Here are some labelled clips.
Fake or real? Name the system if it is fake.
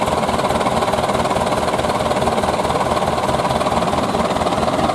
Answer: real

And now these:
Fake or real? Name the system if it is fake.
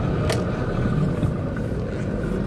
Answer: real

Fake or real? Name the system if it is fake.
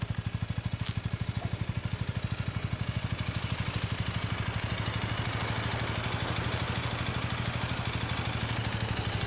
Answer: real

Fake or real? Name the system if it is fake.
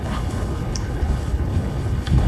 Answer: fake, codec, HILCodec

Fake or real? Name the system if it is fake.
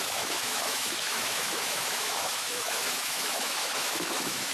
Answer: fake, autoencoder, DAC-VAE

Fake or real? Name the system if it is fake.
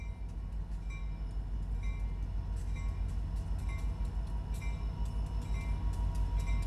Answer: real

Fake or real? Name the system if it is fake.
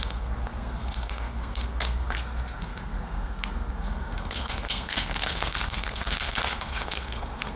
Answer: fake, codec, SNAC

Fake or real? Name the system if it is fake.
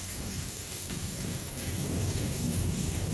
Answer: fake, codec, DAC